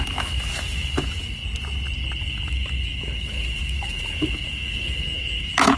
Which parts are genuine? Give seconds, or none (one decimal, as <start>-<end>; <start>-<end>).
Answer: 1.4-2.2